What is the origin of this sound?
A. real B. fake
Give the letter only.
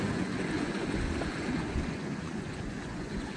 B